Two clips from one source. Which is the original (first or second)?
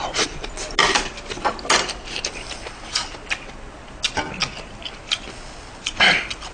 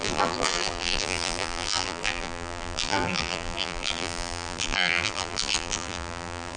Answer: first